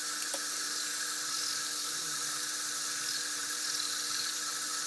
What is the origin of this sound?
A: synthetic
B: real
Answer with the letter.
A